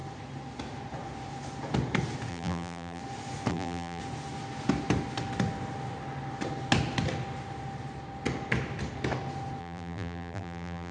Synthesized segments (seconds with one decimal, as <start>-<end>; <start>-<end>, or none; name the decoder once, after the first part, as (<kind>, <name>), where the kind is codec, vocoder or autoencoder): 2.3-3.0 (vocoder, BigVGAN v2); 3.5-4.0; 9.6-10.9